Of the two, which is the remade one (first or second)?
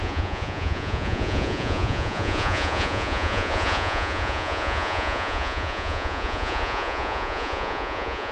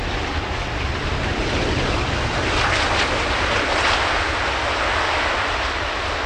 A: first